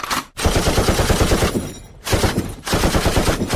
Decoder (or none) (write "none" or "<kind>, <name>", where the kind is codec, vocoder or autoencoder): vocoder, BigVGAN v2